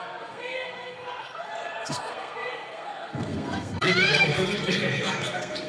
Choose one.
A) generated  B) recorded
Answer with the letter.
A